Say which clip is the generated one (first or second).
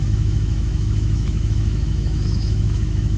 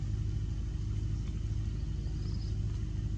first